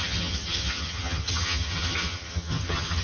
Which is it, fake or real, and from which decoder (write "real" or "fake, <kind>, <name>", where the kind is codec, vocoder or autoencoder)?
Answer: fake, vocoder, HiFi-GAN